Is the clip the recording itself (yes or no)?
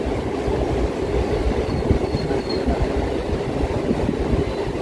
yes